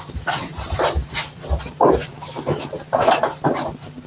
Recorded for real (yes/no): no